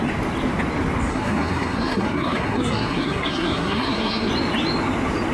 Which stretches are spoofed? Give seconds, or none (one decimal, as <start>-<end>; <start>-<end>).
1.1-4.3